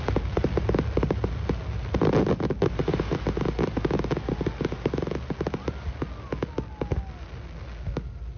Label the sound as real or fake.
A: real